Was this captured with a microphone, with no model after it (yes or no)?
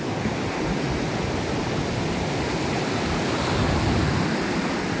yes